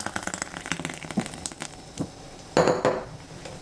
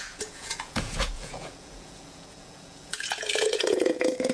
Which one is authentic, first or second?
first